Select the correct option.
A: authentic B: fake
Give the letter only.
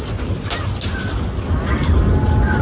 A